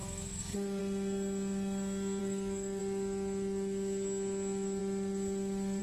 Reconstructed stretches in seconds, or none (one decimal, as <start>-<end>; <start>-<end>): 0.0-0.8; 2.2-2.8